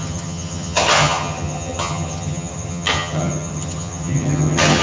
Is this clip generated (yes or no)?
yes